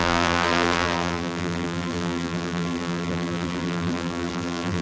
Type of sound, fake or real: fake